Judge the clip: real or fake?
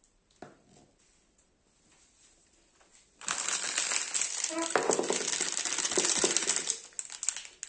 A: real